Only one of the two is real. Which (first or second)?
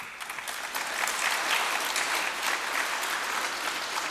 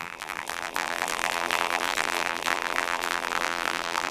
first